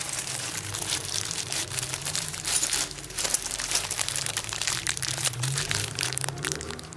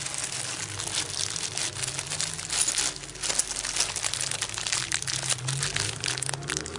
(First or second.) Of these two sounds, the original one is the second